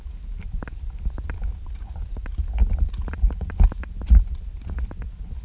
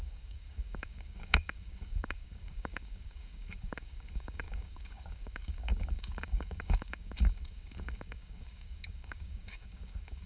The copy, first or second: second